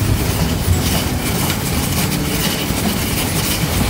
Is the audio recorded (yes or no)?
no